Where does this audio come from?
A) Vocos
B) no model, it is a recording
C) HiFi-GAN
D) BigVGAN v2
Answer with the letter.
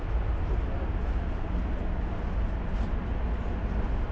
B